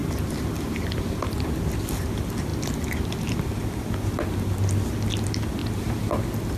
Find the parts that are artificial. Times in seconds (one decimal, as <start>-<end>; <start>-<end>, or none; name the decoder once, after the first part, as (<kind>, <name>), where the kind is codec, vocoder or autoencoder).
0.0-1.0 (vocoder, BigVGAN v2); 5.6-6.6